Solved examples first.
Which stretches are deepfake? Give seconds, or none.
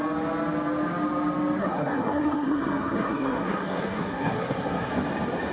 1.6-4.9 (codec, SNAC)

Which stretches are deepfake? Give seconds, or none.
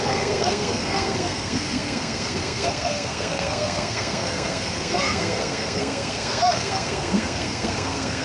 0.0-8.2 (codec, SNAC)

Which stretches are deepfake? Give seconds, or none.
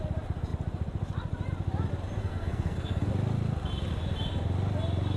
2.2-3.1 (codec, SNAC)